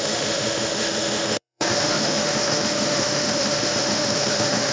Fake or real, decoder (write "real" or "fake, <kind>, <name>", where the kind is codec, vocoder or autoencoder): fake, autoencoder, DAC-VAE